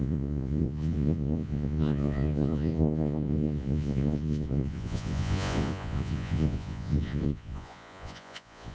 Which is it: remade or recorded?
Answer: remade